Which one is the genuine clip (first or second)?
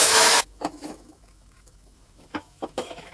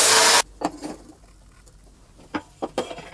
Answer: second